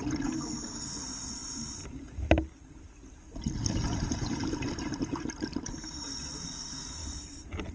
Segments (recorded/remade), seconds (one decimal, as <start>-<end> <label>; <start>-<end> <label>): 0.0-7.7 recorded